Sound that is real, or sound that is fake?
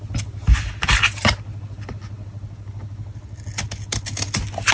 real